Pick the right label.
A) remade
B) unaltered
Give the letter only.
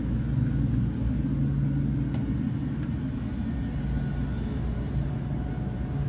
B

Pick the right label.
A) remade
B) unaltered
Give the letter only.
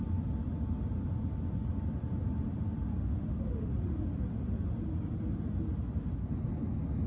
B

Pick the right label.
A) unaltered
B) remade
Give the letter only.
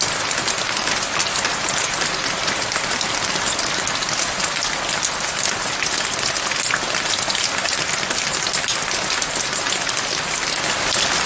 A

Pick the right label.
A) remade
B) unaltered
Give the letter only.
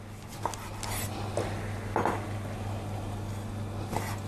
B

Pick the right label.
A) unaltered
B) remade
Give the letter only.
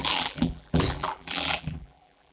B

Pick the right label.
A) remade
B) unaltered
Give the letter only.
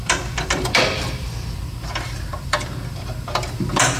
A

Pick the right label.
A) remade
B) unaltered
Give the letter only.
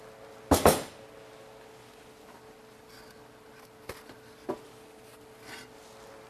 B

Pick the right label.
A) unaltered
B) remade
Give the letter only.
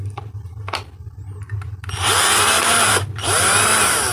A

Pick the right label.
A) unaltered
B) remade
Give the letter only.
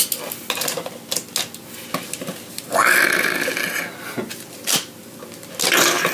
A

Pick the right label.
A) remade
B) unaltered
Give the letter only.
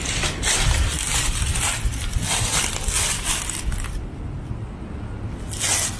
B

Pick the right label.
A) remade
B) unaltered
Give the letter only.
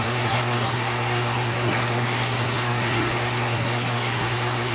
A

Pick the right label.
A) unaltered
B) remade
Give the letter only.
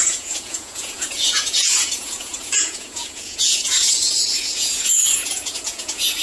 B